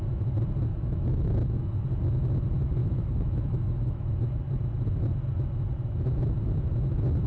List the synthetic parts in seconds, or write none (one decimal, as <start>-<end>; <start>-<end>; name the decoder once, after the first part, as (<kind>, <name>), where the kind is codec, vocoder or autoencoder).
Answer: 0.7-1.8 (autoencoder, DAC-VAE); 2.8-4.1